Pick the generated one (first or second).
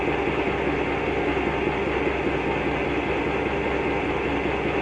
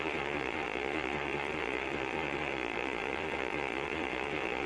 second